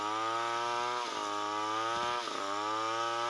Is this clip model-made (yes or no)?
no